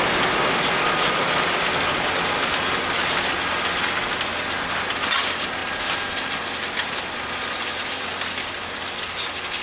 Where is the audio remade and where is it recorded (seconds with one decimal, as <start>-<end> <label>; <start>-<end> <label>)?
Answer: 0.0-9.6 recorded